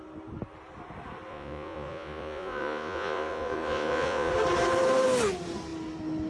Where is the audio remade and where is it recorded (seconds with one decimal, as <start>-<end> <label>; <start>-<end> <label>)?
0.0-1.3 recorded; 1.3-4.3 remade; 4.3-6.3 recorded